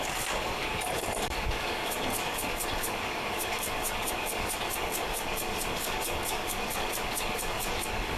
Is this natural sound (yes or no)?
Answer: no